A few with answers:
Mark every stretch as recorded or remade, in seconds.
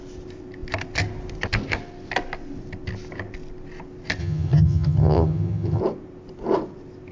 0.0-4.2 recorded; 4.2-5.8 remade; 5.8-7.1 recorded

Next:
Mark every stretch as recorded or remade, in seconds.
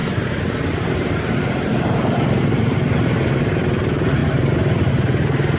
0.0-3.4 remade; 3.4-4.2 recorded; 4.2-4.9 remade; 4.9-5.6 recorded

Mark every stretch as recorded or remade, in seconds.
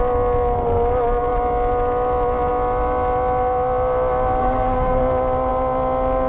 0.0-4.4 recorded; 4.4-5.0 remade; 5.0-6.3 recorded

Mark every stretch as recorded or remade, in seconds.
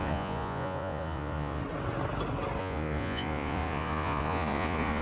0.0-1.6 remade; 1.6-2.6 recorded; 2.6-5.0 remade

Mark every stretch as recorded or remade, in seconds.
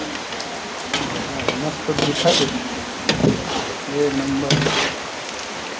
0.0-0.7 remade; 0.7-2.0 recorded; 2.0-2.6 remade; 2.6-3.2 recorded; 3.2-3.8 remade; 3.8-5.8 recorded